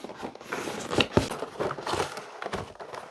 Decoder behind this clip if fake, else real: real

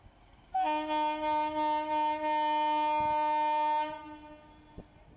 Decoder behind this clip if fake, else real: real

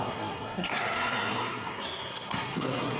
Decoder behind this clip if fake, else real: fake, codec, SNAC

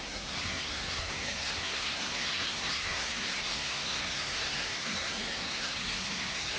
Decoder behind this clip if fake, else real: fake, codec, SNAC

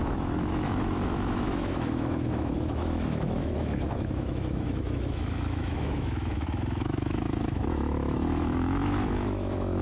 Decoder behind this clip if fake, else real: fake, autoencoder, DAC-VAE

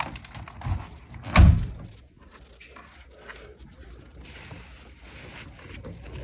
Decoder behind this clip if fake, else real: real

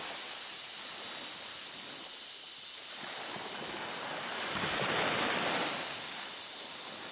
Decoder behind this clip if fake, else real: real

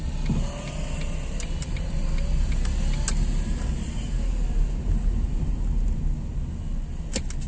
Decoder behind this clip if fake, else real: real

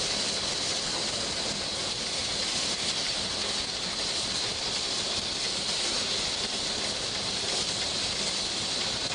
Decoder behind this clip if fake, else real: real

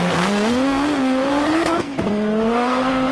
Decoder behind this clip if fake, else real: fake, codec, SNAC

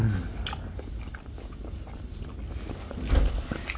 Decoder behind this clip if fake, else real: real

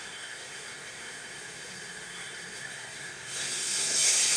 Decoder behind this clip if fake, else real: fake, codec, SNAC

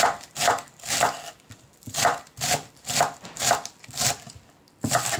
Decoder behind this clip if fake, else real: fake, vocoder, BigVGAN v2